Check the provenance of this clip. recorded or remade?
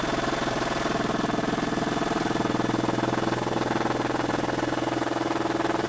recorded